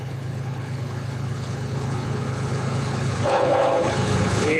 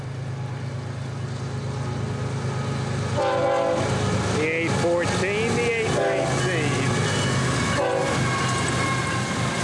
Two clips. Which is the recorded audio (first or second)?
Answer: second